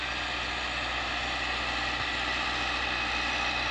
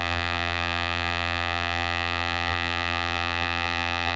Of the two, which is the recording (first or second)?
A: first